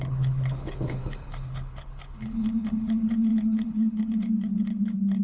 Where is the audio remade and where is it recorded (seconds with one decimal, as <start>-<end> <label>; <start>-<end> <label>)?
0.0-5.2 remade